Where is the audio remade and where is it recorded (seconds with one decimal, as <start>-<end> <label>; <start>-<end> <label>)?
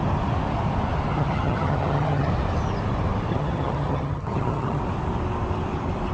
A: 0.0-1.1 recorded; 1.1-2.3 remade; 2.3-3.3 recorded; 3.3-4.8 remade; 4.8-6.1 recorded